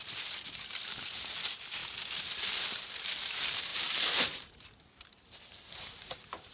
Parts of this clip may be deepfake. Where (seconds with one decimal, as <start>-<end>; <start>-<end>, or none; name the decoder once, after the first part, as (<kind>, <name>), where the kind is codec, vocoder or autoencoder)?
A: 0.0-1.8 (vocoder, BigVGAN v2); 3.2-6.5